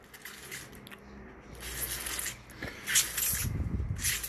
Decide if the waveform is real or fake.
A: real